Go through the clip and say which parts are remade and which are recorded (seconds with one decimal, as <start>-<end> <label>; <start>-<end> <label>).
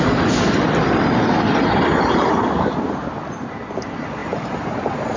0.0-5.2 recorded